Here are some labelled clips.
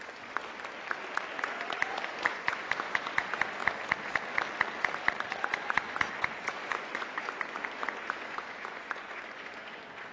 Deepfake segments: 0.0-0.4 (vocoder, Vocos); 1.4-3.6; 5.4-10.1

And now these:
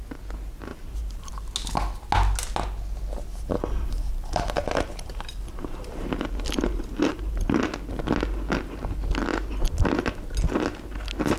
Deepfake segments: 0.7-1.3 (vocoder, BigVGAN v2); 3.3-7.6

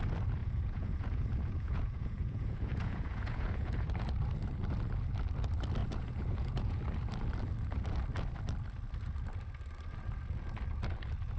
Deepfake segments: 0.4-3.9 (vocoder, Vocos); 5.8-6.8

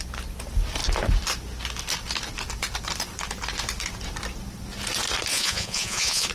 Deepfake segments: 5.3-6.3 (vocoder, Vocos)

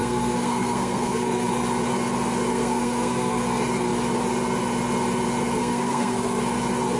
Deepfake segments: 0.0-1.5 (codec, SNAC); 2.5-3.4; 5.6-6.4

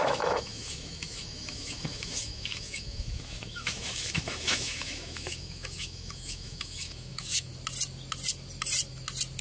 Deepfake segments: 0.0-7.5 (autoencoder, DAC-VAE)

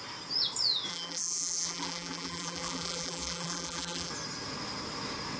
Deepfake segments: 0.9-4.1 (vocoder, BigVGAN v2)

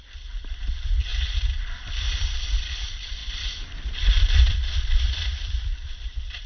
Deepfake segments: 0.0-1.1 (vocoder, BigVGAN v2); 1.9-3.2; 4.5-6.5